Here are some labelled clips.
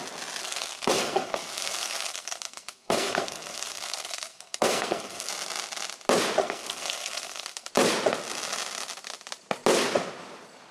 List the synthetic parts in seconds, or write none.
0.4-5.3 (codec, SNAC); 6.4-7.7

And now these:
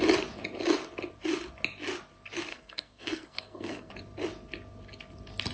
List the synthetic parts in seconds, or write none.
2.5-3.9 (codec, SNAC)

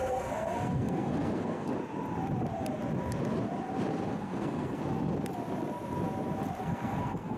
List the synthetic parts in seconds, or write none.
0.0-1.7 (codec, SNAC); 4.1-4.8; 6.6-7.4

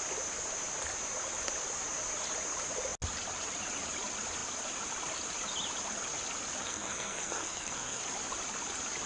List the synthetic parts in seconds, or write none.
6.6-8.0 (codec, SNAC)

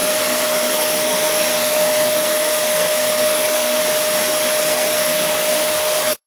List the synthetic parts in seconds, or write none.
0.0-3.8 (codec, SNAC); 4.6-6.3